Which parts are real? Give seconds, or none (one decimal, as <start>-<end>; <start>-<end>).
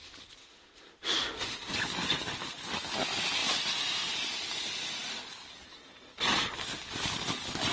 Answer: 0.0-0.4; 1.7-7.7